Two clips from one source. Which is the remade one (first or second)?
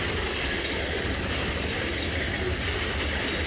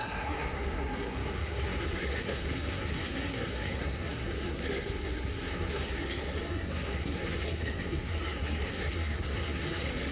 second